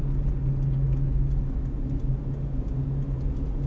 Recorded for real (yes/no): yes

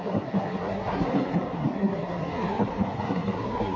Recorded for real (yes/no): no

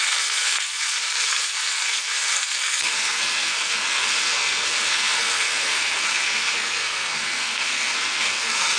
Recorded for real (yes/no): no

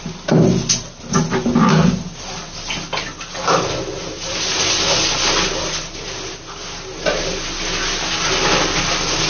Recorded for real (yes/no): yes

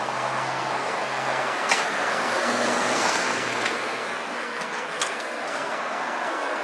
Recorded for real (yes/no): no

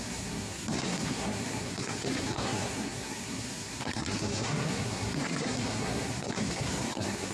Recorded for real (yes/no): no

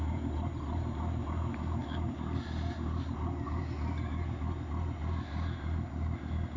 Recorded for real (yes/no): yes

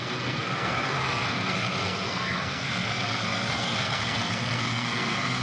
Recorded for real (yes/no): no